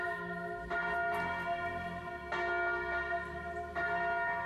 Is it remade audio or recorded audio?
recorded